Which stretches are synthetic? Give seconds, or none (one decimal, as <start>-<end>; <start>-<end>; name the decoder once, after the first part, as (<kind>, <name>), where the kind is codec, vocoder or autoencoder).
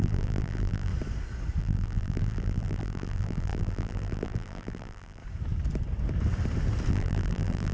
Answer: 0.0-0.9 (vocoder, BigVGAN v2); 1.6-5.2; 6.9-7.7